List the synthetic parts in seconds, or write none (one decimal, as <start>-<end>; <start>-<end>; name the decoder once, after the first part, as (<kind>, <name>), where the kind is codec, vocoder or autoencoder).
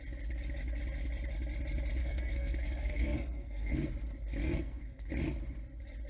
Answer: 2.0-3.9 (codec, SNAC); 4.4-5.1